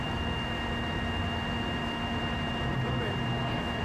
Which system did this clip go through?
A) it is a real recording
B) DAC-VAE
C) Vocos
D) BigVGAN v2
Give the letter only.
A